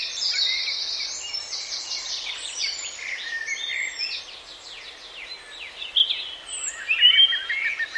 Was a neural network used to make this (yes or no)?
no